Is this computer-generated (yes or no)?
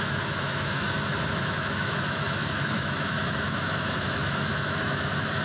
yes